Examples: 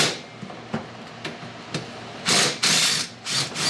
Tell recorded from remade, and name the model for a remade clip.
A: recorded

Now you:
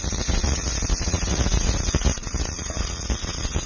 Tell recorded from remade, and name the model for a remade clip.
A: remade, vocoder, Vocos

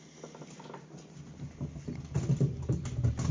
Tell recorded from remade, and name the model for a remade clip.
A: recorded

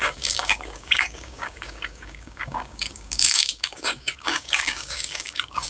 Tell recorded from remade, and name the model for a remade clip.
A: remade, codec, DAC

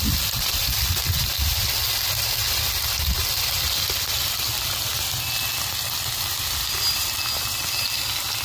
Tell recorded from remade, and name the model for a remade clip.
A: recorded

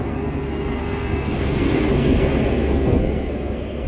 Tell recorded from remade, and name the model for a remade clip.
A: remade, codec, SNAC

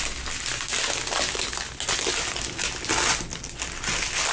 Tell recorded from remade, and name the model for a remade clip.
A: recorded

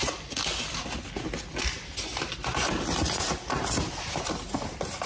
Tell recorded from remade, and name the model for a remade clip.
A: recorded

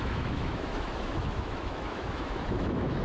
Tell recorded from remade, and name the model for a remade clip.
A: remade, autoencoder, DAC-VAE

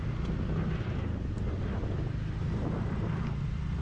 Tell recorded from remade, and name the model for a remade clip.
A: recorded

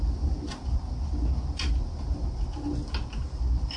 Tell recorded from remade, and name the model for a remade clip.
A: recorded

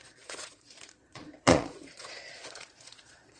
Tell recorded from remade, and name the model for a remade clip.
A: remade, vocoder, Vocos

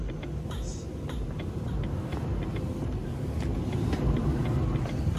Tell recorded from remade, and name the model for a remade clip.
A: recorded